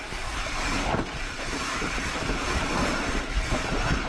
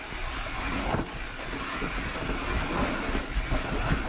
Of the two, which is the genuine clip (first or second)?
second